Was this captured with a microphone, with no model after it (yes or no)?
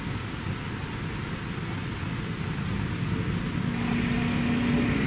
yes